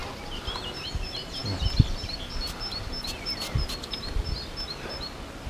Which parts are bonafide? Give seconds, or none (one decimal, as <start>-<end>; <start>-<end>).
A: 0.0-5.5